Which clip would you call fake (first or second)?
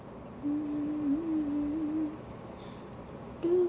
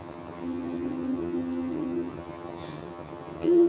second